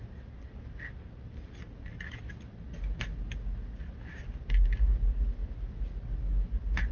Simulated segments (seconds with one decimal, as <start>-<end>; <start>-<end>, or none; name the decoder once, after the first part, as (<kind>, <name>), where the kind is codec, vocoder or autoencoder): none